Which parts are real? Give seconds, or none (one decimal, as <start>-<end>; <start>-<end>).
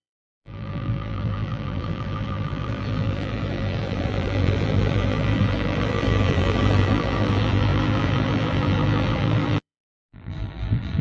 none